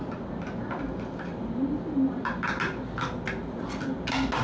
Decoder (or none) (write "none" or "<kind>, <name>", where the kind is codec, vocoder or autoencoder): none